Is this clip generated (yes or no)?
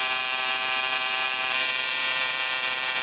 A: yes